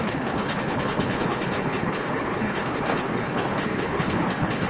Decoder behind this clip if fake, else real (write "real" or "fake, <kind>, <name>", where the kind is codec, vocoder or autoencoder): fake, codec, HILCodec